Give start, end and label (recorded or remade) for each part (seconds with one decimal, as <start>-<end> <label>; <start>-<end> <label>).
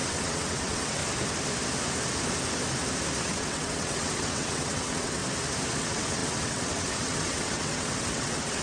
0.0-1.0 remade; 1.0-3.2 recorded; 3.2-5.2 remade; 5.2-5.8 recorded; 5.8-8.6 remade